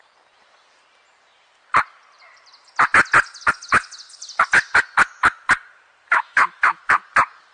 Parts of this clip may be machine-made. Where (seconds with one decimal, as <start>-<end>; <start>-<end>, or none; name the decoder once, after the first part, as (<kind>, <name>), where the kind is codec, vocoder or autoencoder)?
6.1-6.8 (autoencoder, DAC-VAE)